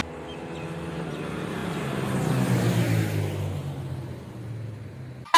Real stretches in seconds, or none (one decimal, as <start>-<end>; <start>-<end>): 0.0-5.4